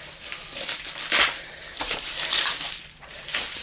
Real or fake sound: fake